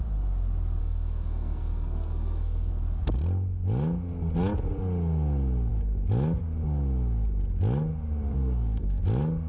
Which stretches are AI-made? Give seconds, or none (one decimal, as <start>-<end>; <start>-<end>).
0.8-2.7; 8.3-9.0